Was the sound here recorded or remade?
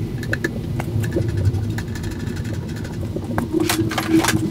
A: recorded